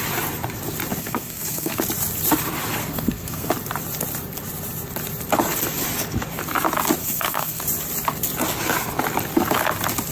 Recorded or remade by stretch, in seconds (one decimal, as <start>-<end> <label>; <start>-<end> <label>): 0.0-1.0 recorded; 1.0-1.8 remade; 1.8-2.8 recorded; 2.8-3.5 remade; 3.5-7.0 recorded; 7.0-7.6 remade; 7.6-10.1 recorded